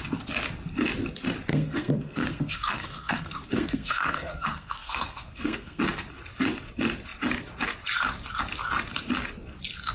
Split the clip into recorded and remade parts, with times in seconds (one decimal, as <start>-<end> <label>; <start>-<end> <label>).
0.0-1.5 recorded; 1.5-5.8 remade; 5.8-9.9 recorded